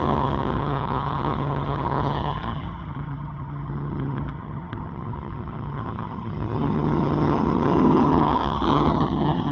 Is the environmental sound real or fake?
fake